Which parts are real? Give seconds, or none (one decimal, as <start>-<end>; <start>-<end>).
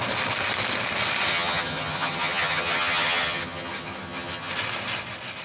0.0-1.3; 4.5-5.4